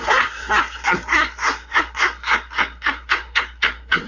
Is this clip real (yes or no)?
no